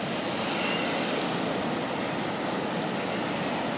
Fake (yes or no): no